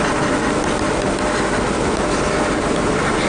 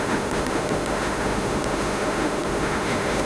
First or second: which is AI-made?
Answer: second